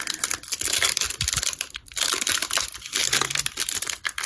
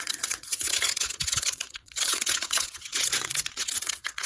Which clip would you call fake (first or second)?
second